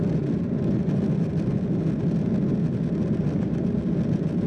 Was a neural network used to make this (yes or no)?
no